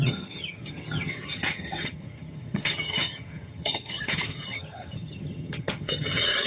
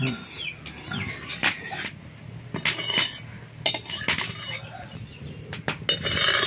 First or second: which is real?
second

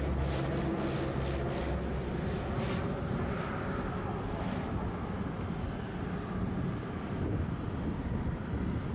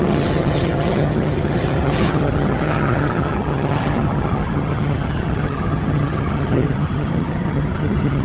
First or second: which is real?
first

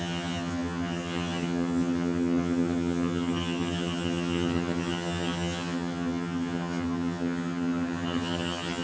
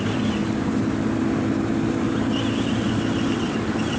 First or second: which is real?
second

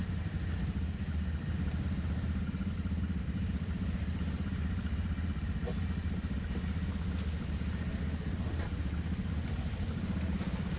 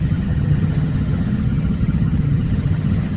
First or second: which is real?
first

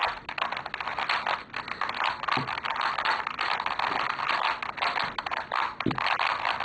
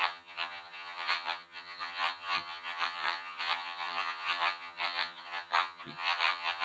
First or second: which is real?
first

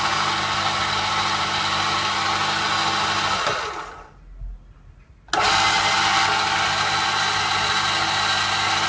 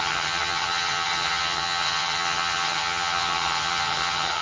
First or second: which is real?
first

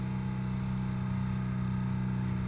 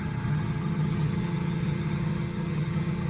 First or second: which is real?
first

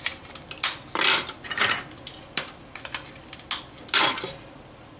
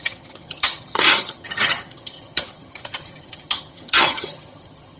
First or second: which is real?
first